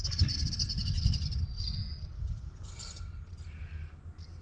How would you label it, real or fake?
real